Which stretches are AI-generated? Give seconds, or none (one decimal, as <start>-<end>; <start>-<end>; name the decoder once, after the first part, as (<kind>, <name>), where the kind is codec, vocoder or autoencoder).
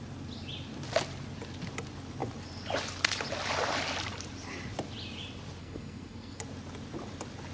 5.6-6.4 (codec, SNAC)